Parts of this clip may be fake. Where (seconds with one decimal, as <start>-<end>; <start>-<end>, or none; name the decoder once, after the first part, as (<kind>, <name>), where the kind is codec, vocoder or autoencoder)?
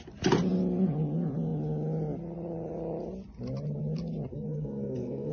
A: 4.3-5.3 (codec, SNAC)